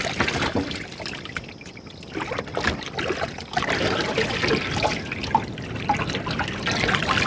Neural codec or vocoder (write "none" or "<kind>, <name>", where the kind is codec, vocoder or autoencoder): none